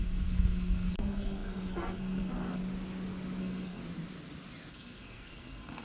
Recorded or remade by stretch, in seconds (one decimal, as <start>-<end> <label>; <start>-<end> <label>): 0.0-2.6 remade; 2.6-3.4 recorded; 3.4-3.8 remade; 3.8-4.7 recorded; 4.7-5.8 remade